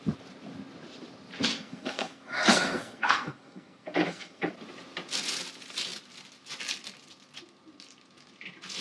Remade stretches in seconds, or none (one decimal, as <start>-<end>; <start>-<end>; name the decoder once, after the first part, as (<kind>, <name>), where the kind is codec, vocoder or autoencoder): 1.5-4.5 (codec, SNAC)